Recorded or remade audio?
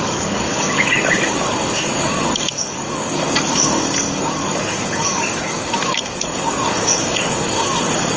remade